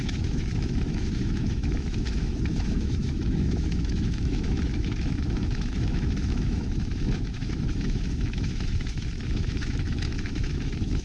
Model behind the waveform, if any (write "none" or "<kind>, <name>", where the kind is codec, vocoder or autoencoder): autoencoder, DAC-VAE